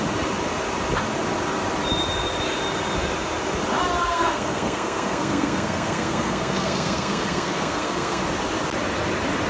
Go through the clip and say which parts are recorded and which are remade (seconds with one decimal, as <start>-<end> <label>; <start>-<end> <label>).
0.0-4.0 recorded; 4.0-8.2 remade; 8.2-9.5 recorded